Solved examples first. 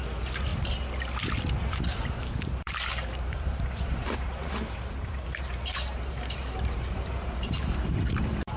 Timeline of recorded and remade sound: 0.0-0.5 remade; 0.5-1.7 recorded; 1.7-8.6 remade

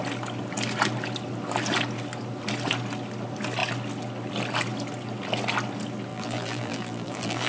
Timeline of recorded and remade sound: 0.0-6.1 recorded; 6.1-7.5 remade